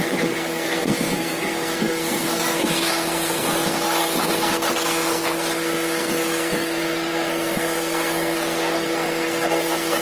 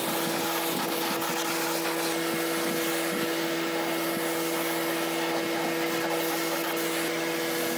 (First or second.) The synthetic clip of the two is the first